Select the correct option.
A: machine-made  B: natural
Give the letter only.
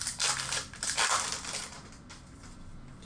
B